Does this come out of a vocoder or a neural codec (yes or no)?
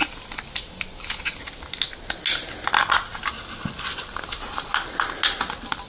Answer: no